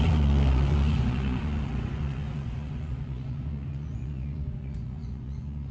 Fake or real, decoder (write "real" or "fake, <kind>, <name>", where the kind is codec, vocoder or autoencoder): fake, vocoder, Vocos